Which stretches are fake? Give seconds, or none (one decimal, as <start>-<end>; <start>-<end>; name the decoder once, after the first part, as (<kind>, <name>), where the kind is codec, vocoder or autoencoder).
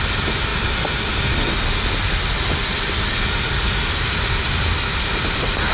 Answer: none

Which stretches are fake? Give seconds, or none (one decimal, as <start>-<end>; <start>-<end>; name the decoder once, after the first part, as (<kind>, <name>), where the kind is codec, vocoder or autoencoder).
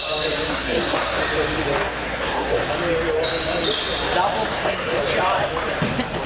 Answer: 0.5-1.2 (codec, SNAC); 1.8-2.7; 4.5-5.0